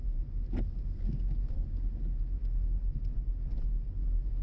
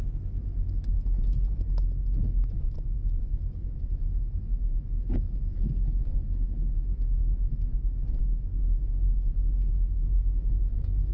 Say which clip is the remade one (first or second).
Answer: second